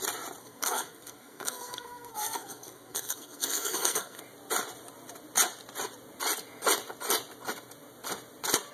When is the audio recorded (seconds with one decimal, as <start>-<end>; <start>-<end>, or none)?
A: 0.0-0.4; 4.2-8.7